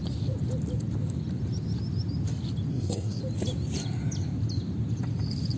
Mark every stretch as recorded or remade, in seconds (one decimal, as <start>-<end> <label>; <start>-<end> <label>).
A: 0.0-2.7 recorded; 2.7-3.2 remade; 3.2-5.6 recorded